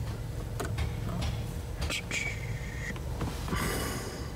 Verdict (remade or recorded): recorded